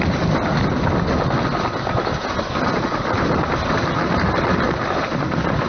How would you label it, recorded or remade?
recorded